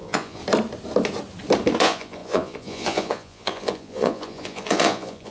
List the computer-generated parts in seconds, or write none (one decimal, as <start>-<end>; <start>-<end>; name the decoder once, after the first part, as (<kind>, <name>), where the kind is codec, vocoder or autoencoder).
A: 0.0-0.4 (vocoder, Vocos); 1.8-5.3